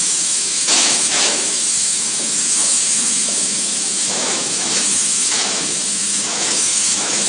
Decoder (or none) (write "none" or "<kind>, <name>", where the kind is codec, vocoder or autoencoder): autoencoder, DAC-VAE